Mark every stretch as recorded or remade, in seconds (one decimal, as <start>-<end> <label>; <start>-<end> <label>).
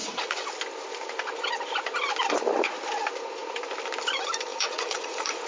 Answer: 0.0-0.5 remade; 0.5-4.5 recorded; 4.5-5.5 remade